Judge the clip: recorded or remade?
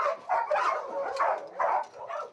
recorded